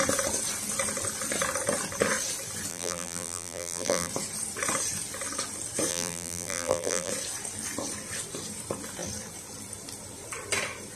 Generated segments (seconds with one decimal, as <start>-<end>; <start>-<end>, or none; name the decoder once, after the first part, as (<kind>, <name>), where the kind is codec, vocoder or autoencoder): 2.7-4.1 (vocoder, BigVGAN v2); 5.9-7.1